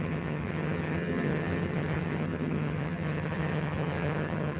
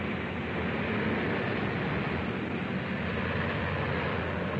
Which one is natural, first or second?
second